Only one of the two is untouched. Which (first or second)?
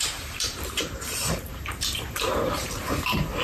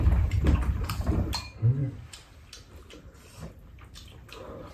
second